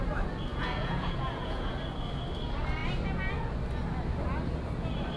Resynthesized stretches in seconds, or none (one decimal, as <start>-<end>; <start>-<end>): 0.5-1.7